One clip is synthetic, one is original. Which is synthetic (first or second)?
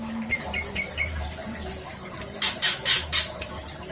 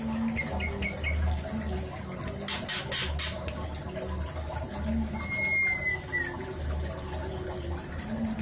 first